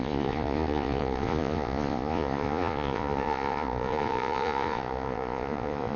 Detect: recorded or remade remade